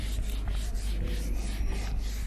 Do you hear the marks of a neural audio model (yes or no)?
no